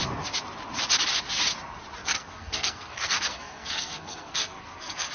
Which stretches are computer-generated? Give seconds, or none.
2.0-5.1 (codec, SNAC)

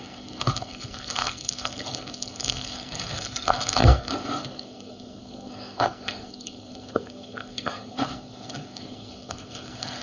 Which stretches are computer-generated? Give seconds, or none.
0.0-10.0 (codec, SNAC)

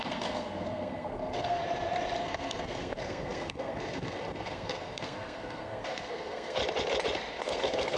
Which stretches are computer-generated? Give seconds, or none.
0.0-1.6 (codec, SNAC); 2.2-6.6; 7.4-8.0